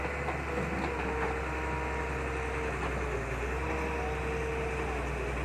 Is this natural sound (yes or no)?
yes